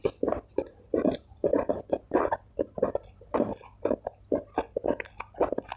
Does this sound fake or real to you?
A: fake